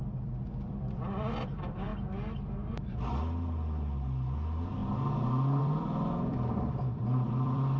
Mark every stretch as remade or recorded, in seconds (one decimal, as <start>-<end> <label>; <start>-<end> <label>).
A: 0.0-1.9 remade; 1.9-2.7 recorded; 2.7-4.8 remade; 4.8-5.6 recorded; 5.6-7.8 remade